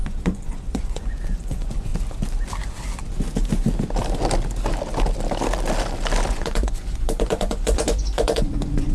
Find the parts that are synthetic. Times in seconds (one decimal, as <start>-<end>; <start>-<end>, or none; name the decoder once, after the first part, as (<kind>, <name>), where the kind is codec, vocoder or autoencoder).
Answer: 0.0-1.9 (vocoder, Vocos); 6.3-8.9